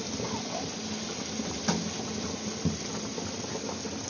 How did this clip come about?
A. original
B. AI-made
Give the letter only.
A